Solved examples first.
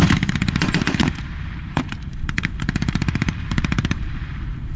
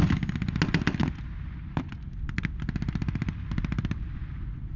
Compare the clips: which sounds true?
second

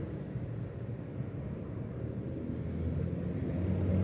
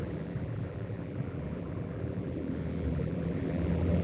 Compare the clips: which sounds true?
first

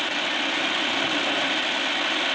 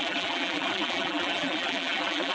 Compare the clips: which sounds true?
first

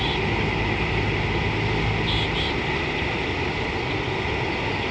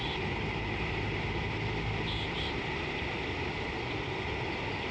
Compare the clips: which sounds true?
first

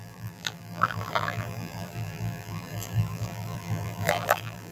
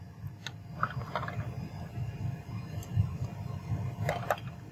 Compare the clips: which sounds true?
second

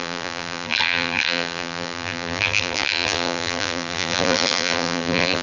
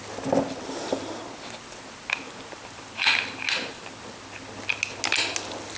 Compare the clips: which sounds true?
second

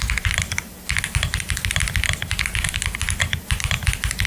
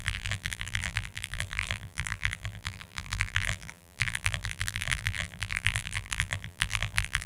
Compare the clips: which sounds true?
first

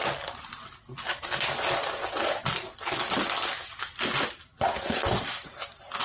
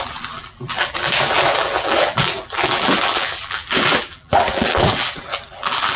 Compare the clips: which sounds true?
first